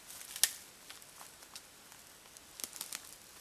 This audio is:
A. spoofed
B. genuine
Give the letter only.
B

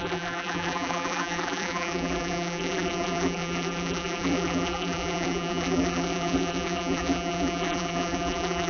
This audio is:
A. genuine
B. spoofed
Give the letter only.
B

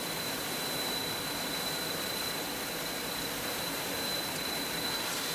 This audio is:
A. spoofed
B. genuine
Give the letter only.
A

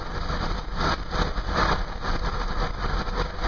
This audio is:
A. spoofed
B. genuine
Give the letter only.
B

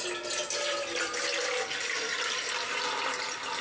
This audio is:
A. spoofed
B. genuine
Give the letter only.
B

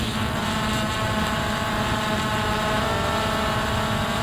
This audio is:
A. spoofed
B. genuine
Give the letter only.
B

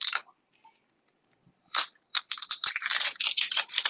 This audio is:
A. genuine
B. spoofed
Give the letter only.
B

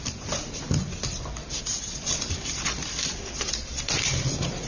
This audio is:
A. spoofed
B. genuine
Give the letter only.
A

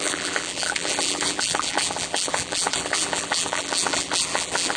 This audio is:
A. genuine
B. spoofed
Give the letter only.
B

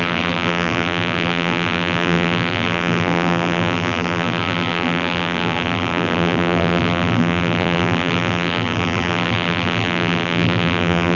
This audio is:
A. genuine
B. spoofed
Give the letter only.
B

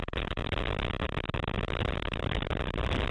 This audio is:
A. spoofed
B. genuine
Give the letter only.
B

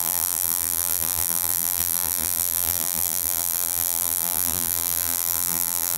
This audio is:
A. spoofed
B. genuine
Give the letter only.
A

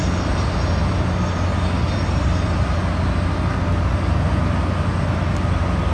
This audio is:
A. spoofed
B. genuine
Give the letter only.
B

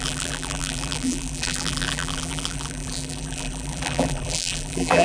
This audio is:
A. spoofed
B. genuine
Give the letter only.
A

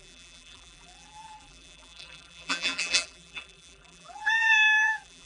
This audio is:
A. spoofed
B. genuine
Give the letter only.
A